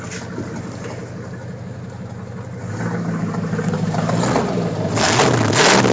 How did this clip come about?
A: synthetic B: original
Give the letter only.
B